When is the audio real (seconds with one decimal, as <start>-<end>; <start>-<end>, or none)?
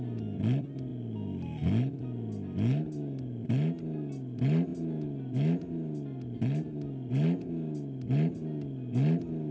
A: 0.0-9.5